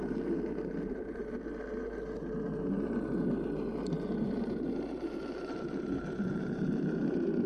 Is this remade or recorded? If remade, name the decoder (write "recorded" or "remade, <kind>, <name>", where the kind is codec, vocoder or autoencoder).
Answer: recorded